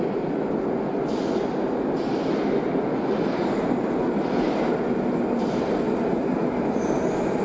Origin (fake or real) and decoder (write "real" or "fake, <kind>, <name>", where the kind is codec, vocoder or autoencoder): real